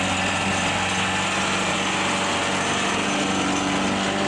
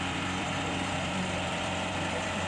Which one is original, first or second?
first